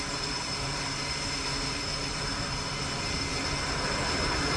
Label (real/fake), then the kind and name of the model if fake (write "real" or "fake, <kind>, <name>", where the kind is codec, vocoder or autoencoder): real